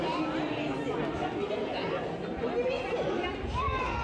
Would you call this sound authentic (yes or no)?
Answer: yes